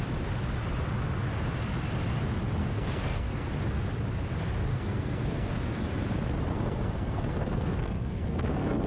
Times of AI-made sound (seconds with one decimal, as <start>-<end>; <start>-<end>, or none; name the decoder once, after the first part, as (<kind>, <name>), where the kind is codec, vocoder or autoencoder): 2.6-3.5 (codec, SNAC); 4.7-5.8; 6.5-8.9